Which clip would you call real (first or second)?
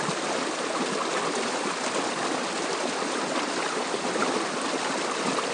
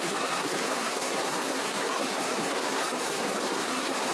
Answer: first